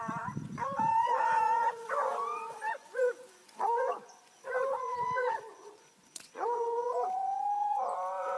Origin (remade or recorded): remade